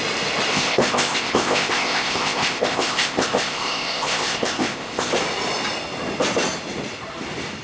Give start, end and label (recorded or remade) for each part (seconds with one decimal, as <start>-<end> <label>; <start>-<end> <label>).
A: 0.0-0.5 recorded; 0.5-5.1 remade; 5.1-7.6 recorded